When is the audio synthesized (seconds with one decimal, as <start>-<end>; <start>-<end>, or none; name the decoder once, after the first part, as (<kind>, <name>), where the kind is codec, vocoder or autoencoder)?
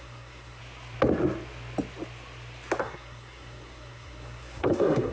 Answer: 0.0-0.6 (codec, SNAC); 2.8-5.1